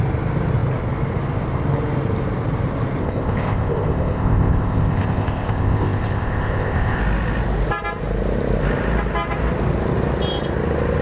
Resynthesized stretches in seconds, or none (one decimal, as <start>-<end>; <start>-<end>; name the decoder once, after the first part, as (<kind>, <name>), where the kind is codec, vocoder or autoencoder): 3.0-7.0 (codec, ZipCodec)